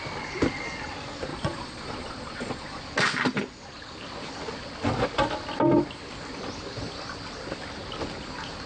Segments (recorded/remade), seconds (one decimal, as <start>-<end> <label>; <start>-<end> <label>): 0.0-1.3 recorded; 1.3-2.8 remade; 2.8-8.7 recorded